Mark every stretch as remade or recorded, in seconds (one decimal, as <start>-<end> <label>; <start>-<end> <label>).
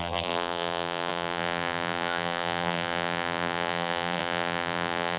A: 0.0-5.2 remade